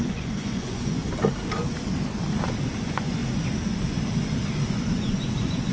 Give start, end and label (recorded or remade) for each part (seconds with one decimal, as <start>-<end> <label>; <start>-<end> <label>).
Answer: 0.0-1.0 remade; 1.0-2.8 recorded; 2.8-3.2 remade; 3.2-4.7 recorded; 4.7-5.7 remade